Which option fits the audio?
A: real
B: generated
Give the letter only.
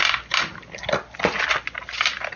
A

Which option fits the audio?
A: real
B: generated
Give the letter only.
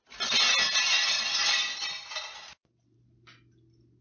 A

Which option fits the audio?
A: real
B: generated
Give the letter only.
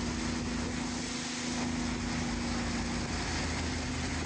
A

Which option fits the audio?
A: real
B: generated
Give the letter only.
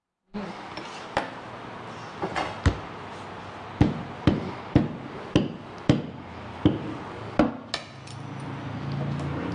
A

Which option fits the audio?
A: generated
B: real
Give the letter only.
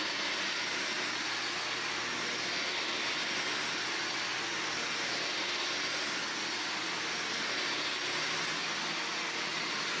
B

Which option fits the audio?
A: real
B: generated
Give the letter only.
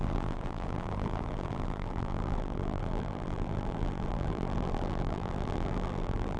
B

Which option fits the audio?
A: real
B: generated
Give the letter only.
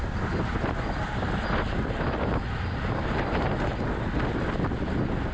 A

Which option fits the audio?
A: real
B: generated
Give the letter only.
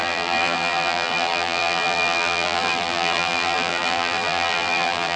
B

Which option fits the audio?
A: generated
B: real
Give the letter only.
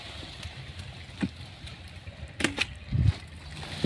B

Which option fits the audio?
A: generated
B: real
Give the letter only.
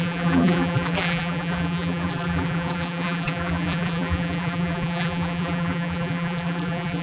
A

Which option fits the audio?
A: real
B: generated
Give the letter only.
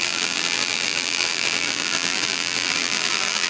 B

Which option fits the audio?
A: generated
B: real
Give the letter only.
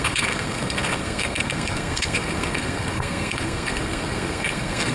A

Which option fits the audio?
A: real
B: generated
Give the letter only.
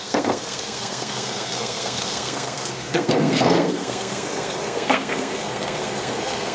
B